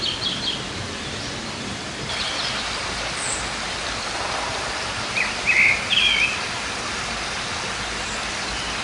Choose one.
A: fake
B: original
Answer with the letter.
B